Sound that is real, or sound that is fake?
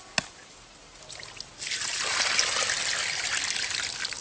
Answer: real